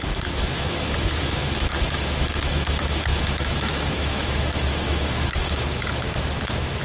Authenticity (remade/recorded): remade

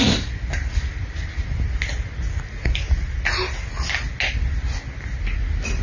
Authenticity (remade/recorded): recorded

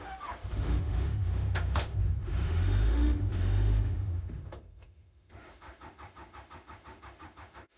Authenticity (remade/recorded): remade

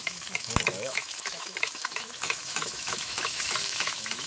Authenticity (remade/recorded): remade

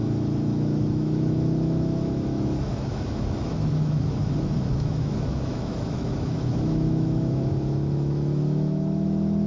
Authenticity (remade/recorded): remade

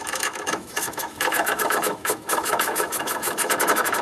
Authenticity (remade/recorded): remade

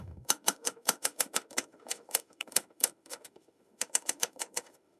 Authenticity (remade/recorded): remade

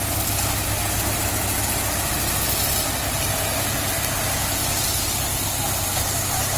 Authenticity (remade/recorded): recorded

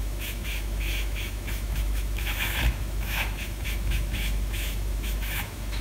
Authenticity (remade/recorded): remade